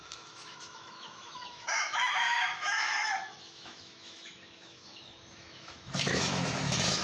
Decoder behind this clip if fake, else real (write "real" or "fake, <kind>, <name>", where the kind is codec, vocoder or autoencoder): fake, autoencoder, DAC-VAE